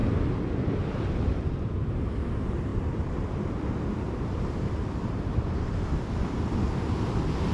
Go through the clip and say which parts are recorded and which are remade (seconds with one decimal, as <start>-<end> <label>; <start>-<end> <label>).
0.0-0.7 recorded; 0.7-7.5 remade